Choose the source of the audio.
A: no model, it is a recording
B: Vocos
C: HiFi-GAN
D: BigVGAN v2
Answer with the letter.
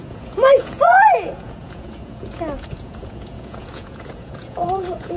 B